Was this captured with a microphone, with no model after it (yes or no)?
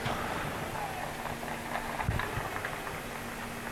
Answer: yes